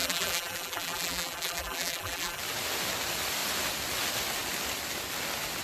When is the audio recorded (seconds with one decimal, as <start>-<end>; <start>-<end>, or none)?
2.4-5.6